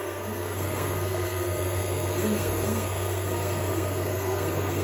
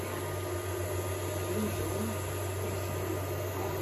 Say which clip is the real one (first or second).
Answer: second